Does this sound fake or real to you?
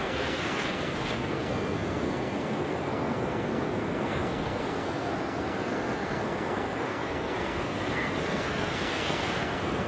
fake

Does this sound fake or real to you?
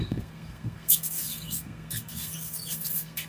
fake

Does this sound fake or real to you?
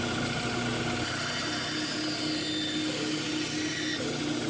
real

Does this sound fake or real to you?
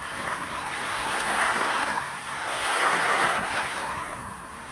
fake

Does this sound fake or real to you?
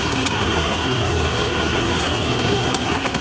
fake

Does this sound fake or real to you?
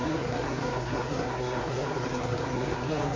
fake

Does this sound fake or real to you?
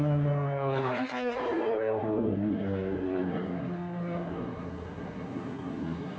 fake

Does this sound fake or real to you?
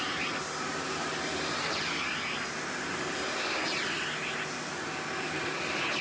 real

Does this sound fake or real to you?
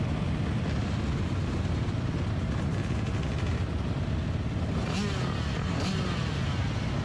real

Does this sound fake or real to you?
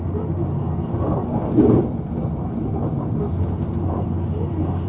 real